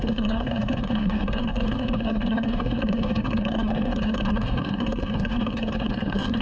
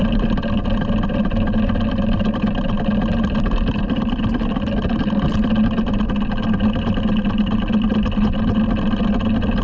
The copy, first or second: first